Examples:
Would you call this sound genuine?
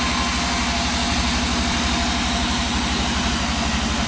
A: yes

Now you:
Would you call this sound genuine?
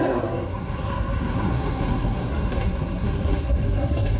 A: no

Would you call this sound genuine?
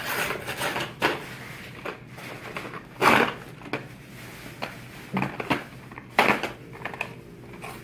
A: yes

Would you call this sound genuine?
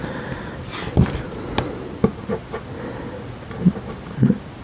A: yes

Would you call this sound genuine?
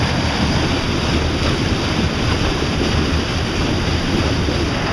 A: yes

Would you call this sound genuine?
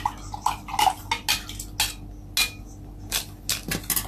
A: yes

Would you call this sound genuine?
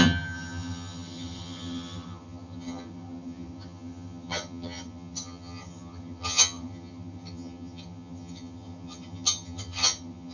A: no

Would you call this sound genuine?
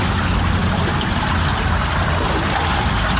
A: yes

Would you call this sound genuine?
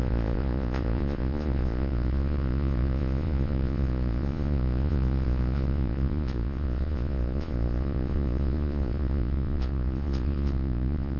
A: no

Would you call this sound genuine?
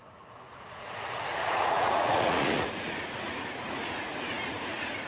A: no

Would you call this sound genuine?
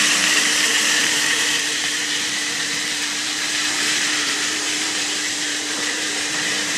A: no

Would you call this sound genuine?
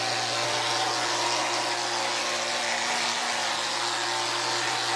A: yes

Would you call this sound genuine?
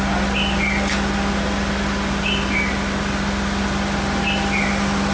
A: yes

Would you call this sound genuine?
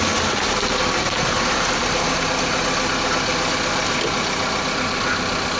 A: yes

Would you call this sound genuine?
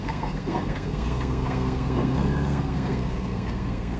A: no